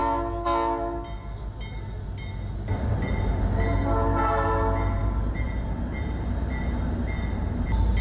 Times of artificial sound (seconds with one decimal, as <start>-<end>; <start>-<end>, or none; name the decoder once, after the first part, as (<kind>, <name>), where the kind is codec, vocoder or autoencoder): none